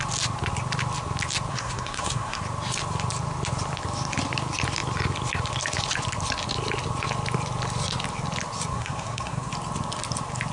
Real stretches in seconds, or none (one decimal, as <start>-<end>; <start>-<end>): 0.0-1.5; 2.4-8.7; 9.5-10.5